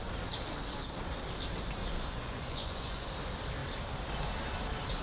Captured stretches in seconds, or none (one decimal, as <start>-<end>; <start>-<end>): 0.0-1.8; 3.1-5.0